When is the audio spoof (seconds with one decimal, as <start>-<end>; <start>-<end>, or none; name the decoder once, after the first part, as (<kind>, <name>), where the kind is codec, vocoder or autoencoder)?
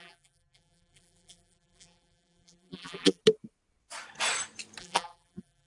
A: 0.0-3.2 (vocoder, BigVGAN v2); 4.8-5.7